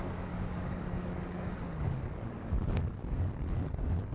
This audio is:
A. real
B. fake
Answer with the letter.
B